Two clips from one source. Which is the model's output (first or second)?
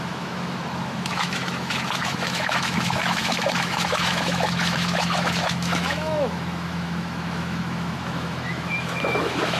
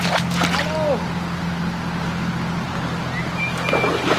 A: first